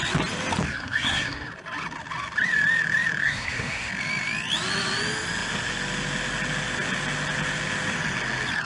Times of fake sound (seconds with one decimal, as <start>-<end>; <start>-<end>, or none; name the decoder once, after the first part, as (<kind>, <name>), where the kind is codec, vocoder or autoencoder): 0.7-1.5 (codec, SNAC); 3.2-3.9